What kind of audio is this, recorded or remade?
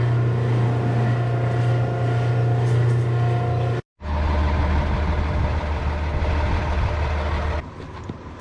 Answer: recorded